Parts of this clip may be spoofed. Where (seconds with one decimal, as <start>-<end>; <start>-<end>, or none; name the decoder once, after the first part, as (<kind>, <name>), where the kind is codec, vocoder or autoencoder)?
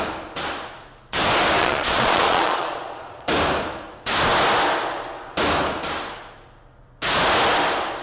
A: 1.6-3.3 (vocoder, Vocos)